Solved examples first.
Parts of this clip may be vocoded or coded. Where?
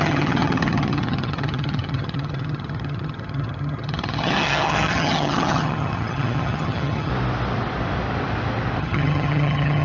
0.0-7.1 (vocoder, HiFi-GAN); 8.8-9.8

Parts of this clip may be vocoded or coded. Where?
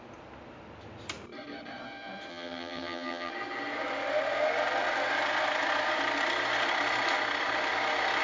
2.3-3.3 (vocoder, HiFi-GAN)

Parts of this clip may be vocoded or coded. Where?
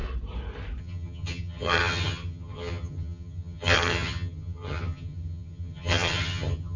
0.8-6.8 (vocoder, HiFi-GAN)